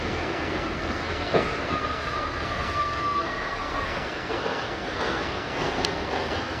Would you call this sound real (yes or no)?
no